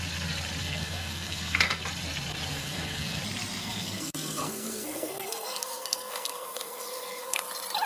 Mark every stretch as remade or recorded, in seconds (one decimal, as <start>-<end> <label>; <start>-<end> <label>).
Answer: 0.0-0.6 recorded; 0.6-1.8 remade; 1.8-2.5 recorded; 2.5-3.2 remade; 3.2-3.6 recorded; 3.6-7.4 remade; 7.4-7.9 recorded